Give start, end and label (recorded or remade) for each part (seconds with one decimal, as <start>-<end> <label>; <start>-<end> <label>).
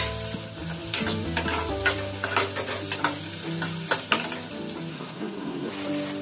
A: 0.0-4.9 recorded; 4.9-5.7 remade; 5.7-6.2 recorded